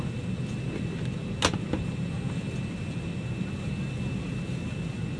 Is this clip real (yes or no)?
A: yes